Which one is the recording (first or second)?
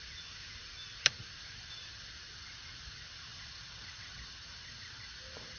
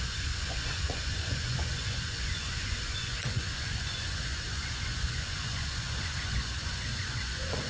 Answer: first